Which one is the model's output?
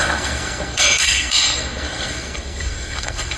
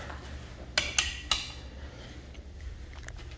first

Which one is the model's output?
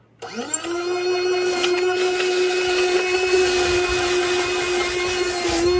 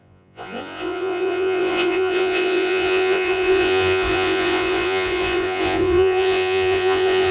second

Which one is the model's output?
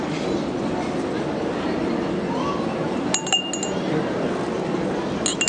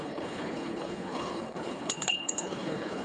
second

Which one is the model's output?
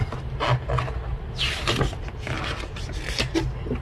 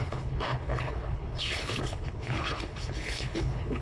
second